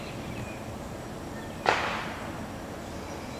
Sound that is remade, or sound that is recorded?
recorded